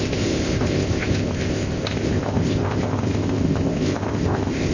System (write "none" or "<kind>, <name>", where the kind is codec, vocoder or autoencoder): codec, ZipCodec